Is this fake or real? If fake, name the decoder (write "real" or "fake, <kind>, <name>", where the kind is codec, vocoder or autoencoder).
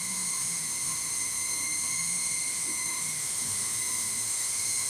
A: fake, autoencoder, DAC-VAE